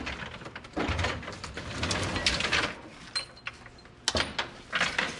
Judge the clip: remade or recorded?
recorded